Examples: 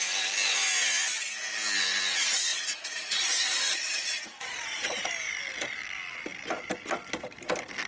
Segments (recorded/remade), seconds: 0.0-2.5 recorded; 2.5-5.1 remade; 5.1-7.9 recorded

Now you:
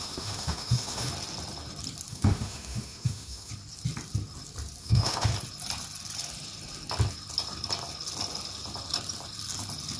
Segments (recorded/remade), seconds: 0.0-1.1 remade; 1.1-2.1 recorded; 2.1-3.5 remade; 3.5-4.8 recorded; 4.8-5.3 remade; 5.3-10.0 recorded